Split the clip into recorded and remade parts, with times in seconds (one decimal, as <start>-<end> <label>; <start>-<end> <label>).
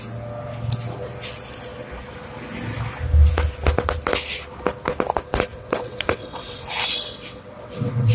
0.0-5.5 recorded; 5.5-8.1 remade